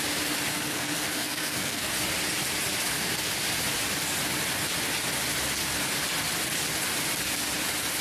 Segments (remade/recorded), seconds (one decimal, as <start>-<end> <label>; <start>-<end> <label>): 0.0-0.5 recorded; 0.5-1.9 remade; 1.9-8.0 recorded